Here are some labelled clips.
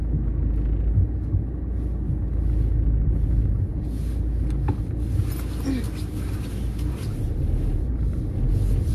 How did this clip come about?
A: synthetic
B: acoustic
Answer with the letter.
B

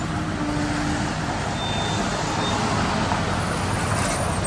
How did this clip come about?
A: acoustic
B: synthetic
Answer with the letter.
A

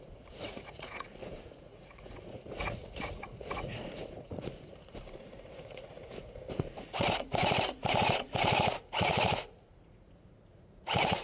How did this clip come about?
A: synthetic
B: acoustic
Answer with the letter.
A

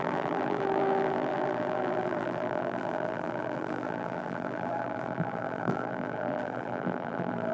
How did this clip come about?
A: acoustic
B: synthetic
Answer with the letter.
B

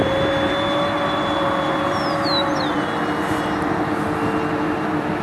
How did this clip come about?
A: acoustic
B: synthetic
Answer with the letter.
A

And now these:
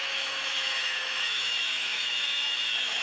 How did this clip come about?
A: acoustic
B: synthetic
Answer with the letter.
B